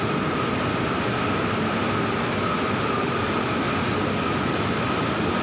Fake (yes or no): no